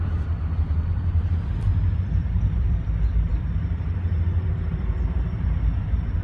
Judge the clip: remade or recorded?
remade